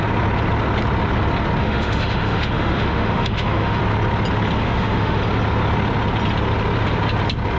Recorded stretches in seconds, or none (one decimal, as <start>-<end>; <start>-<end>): 0.0-1.6; 3.8-4.6; 5.2-7.6